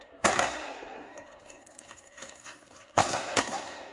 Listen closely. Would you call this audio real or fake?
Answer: fake